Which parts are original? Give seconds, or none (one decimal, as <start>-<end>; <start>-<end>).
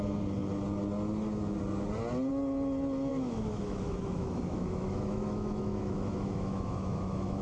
0.0-3.1